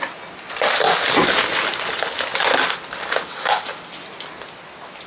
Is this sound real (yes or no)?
yes